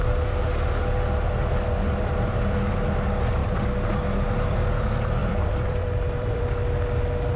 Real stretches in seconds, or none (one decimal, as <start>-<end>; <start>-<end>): 0.0-5.2; 6.4-7.4